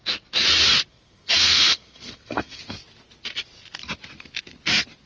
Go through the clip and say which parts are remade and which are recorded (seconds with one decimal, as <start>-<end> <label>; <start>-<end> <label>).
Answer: 0.0-0.9 recorded; 0.9-2.6 remade; 2.6-5.1 recorded